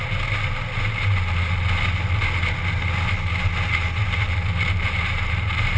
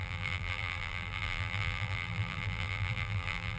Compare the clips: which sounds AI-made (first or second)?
second